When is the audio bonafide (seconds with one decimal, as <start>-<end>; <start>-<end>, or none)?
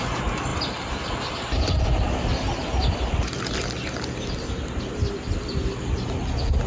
0.0-6.7